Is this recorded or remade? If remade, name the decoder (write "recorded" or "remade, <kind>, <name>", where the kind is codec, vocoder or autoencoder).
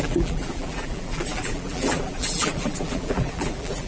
remade, vocoder, BigVGAN v2